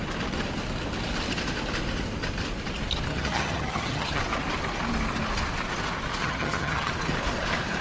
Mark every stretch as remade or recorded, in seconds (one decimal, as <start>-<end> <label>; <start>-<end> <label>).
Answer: 0.0-3.1 recorded; 3.1-4.2 remade; 4.2-6.2 recorded; 6.2-6.9 remade; 6.9-7.8 recorded